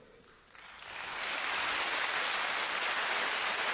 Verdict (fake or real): real